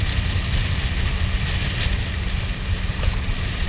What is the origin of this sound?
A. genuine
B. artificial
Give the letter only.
A